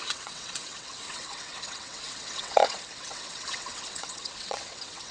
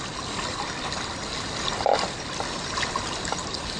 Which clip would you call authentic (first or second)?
second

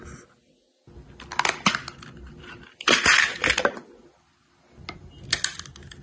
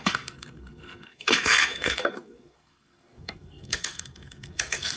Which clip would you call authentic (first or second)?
first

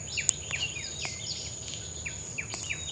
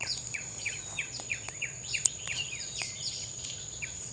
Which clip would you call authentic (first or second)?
first